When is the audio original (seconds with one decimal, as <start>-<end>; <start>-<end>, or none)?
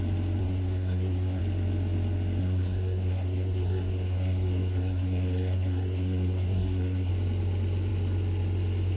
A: 0.0-0.4; 1.4-2.4; 7.1-9.0